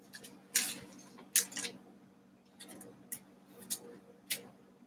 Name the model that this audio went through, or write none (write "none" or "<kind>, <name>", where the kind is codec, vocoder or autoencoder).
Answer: none